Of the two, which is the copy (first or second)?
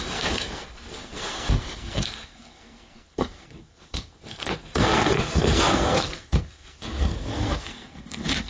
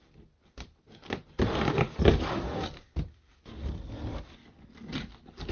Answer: first